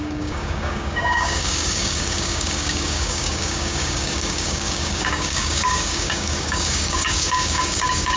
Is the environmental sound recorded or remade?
remade